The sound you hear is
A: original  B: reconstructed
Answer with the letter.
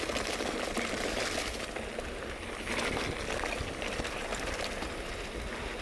A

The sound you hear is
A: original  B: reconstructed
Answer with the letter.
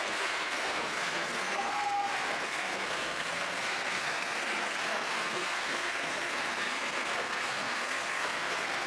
B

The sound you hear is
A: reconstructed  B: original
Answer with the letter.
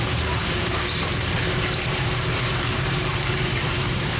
A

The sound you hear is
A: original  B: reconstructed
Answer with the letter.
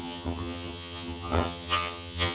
B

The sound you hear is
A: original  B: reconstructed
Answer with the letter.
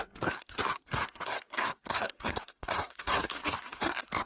B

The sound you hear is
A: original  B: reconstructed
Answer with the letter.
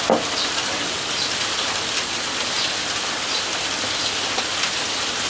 A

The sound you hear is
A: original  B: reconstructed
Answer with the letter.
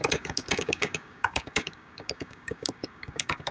B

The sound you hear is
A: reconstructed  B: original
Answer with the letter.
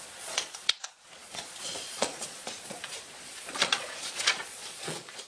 A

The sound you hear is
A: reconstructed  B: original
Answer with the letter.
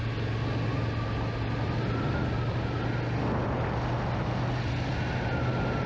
B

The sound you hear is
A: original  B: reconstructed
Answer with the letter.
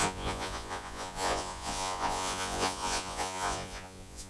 B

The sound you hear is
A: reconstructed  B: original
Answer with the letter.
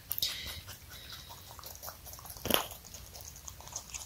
B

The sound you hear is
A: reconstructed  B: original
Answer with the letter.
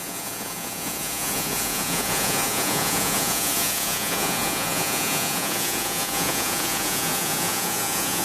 A